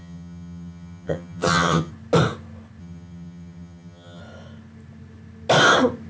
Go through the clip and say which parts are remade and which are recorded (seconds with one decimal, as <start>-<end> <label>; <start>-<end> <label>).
0.0-1.9 remade; 1.9-2.8 recorded; 2.8-4.2 remade; 4.2-6.1 recorded